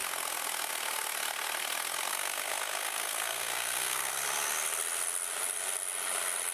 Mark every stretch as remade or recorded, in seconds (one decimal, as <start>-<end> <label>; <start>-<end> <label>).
0.0-2.1 recorded; 2.1-4.1 remade; 4.1-6.5 recorded